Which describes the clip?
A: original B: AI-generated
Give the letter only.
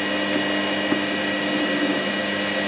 A